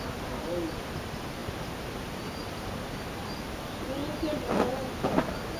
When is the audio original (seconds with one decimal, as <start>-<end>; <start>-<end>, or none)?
0.0-5.6